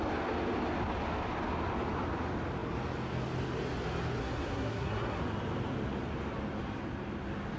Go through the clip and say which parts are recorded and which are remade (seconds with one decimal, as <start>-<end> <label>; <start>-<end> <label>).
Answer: 0.0-4.2 recorded; 4.2-5.2 remade; 5.2-7.6 recorded